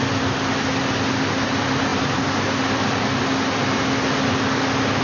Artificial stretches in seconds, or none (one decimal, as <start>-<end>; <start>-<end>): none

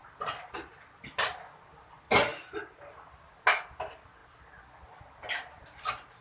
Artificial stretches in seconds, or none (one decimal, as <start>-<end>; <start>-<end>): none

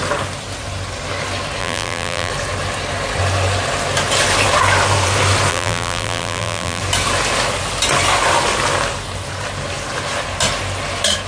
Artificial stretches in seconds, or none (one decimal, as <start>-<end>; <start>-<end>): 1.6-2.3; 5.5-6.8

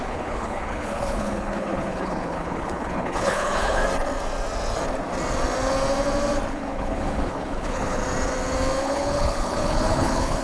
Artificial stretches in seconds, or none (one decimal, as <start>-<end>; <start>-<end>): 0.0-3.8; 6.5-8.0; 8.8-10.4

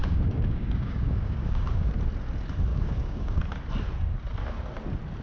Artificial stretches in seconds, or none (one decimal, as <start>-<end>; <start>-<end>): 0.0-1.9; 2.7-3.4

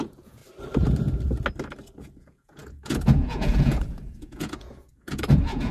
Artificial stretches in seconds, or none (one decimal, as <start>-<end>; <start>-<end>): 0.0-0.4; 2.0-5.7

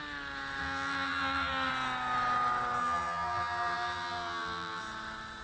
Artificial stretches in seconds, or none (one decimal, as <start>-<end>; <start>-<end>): 0.6-1.7; 2.8-4.8